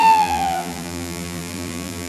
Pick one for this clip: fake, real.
fake